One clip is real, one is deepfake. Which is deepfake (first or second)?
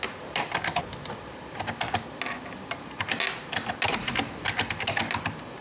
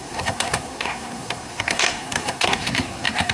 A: second